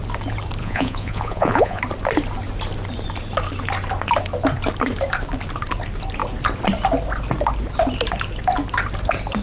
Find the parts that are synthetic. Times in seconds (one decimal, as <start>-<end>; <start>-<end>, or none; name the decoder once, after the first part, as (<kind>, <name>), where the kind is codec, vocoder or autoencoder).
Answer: 0.6-1.8 (vocoder, Vocos)